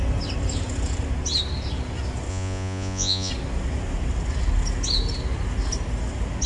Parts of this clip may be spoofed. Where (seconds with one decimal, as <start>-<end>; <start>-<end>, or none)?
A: 2.3-3.3

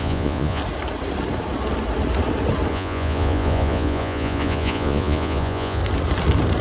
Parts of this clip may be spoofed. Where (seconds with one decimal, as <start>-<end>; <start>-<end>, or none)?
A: 0.0-0.6; 2.7-5.8

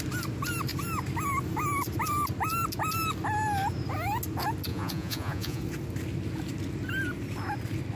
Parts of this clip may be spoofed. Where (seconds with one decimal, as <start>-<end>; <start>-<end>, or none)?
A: 4.7-5.6

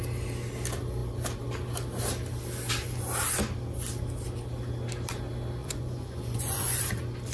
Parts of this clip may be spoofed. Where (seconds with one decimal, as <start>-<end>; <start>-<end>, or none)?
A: 5.6-6.8

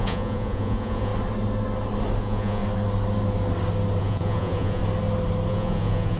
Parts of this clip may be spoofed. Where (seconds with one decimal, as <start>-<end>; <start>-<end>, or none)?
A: 0.0-1.1; 2.2-2.6; 4.0-4.8; 5.5-6.2

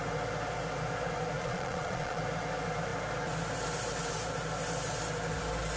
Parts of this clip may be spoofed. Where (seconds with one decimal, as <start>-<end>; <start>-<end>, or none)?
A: 1.4-2.2